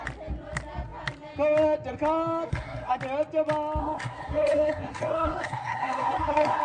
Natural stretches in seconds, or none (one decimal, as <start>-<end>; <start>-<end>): 0.0-2.5; 3.0-3.8